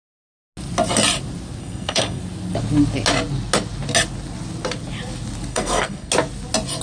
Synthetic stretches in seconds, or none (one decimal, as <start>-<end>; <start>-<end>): 1.6-2.2; 5.5-6.1